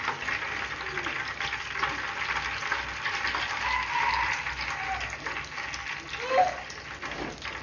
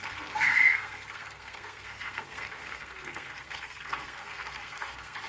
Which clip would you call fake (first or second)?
second